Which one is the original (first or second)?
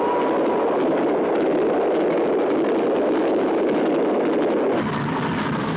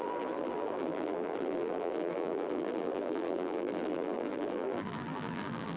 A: first